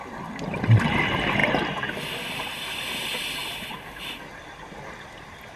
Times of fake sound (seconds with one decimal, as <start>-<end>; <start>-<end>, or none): none